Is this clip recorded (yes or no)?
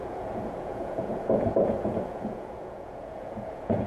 no